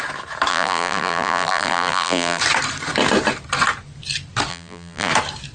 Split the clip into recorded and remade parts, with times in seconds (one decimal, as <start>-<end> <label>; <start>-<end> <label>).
0.0-0.5 recorded; 0.5-2.4 remade; 2.4-4.5 recorded; 4.5-5.1 remade; 5.1-5.5 recorded